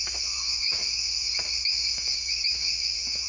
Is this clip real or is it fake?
fake